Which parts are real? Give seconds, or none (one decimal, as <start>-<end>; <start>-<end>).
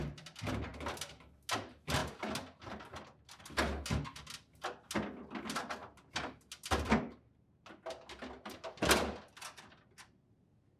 0.0-10.8